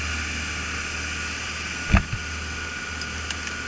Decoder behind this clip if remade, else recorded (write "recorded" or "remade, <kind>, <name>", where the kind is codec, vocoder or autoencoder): recorded